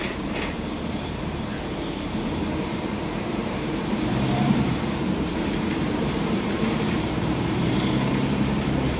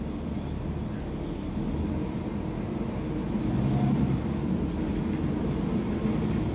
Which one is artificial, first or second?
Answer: first